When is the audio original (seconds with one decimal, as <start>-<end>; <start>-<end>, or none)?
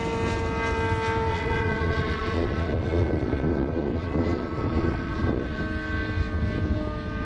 0.0-1.3; 5.6-7.2